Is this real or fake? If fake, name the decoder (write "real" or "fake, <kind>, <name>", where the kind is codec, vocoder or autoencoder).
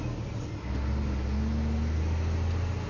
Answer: real